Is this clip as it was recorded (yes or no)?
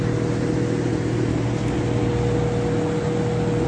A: yes